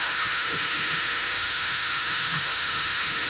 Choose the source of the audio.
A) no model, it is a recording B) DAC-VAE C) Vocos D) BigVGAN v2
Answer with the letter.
B